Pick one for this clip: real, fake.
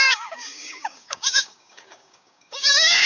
fake